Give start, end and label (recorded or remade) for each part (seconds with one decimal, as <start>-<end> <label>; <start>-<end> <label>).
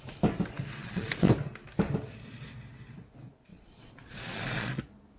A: 0.0-0.8 recorded; 0.8-1.3 remade; 1.3-3.5 recorded; 3.5-4.8 remade; 4.8-5.2 recorded